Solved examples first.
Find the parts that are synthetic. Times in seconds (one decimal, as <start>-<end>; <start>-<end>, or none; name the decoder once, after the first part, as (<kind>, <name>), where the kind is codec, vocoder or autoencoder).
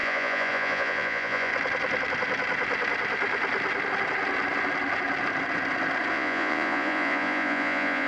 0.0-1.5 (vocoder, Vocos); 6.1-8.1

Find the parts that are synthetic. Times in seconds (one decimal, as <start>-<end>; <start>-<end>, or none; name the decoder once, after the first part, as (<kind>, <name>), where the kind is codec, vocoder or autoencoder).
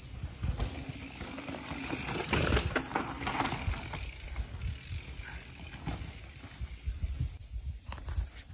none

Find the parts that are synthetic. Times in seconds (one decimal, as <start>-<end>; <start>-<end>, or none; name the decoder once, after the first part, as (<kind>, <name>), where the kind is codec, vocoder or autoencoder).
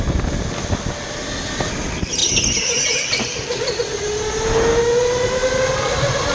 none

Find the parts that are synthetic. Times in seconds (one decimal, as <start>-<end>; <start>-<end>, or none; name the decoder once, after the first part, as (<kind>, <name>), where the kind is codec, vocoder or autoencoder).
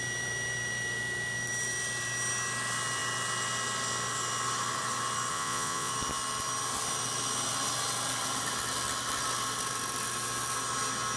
5.3-5.9 (vocoder, Vocos)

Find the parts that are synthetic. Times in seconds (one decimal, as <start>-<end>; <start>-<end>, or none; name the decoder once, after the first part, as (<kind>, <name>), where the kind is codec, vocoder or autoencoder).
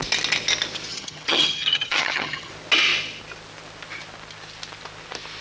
0.9-2.5 (vocoder, HiFi-GAN)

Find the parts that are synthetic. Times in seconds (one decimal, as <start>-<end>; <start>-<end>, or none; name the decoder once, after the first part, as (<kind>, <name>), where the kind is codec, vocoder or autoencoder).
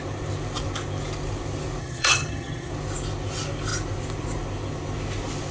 1.8-2.7 (vocoder, HiFi-GAN)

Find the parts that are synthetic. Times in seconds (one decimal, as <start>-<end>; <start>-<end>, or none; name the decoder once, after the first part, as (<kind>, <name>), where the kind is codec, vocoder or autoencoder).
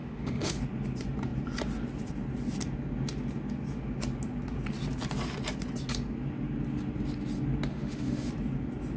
0.0-0.6 (autoencoder, DAC-VAE); 7.7-8.3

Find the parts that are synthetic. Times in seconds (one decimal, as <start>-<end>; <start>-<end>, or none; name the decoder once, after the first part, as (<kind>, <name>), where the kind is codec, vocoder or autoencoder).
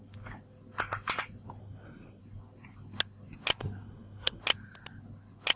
1.6-2.2 (codec, SNAC); 3.6-4.4